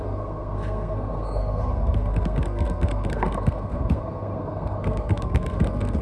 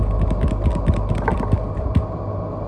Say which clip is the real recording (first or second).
second